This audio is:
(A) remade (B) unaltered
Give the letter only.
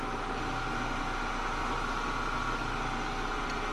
B